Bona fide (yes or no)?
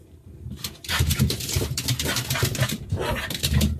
yes